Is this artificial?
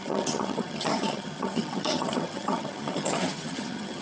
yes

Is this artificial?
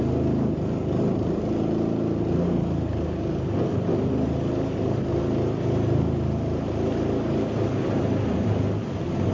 no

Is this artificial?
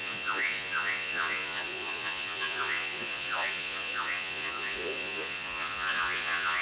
yes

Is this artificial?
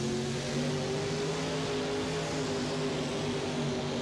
no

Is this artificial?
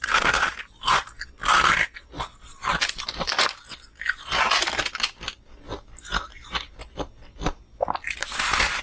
no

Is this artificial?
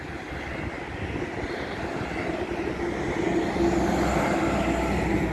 no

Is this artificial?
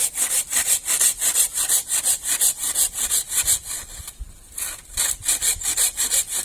yes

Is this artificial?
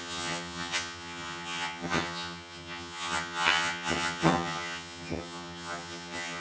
yes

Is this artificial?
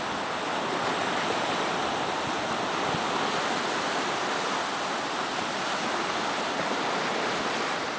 no